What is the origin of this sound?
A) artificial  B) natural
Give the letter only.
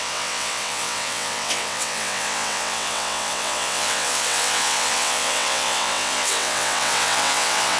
A